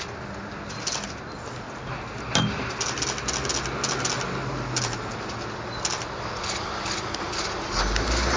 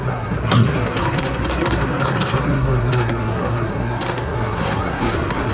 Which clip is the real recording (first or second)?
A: first